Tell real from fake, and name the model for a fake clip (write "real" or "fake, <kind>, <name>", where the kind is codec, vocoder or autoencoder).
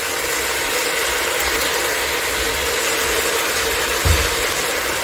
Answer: real